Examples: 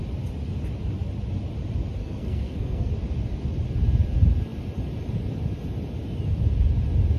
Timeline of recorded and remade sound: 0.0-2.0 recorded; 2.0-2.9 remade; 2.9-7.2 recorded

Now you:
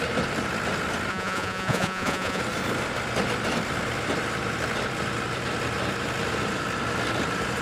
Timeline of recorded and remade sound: 0.0-1.1 recorded; 1.1-2.4 remade; 2.4-7.6 recorded

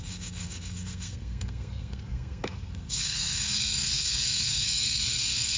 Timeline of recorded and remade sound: 0.0-5.6 remade

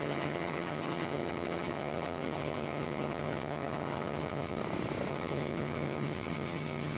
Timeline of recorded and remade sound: 0.0-4.6 remade; 4.6-5.1 recorded; 5.1-7.0 remade

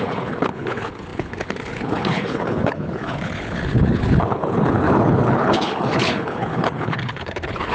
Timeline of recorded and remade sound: 0.0-7.7 remade

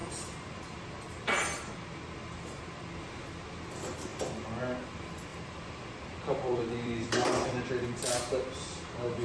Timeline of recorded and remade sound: 0.0-5.3 recorded; 5.3-7.7 remade; 7.7-9.2 recorded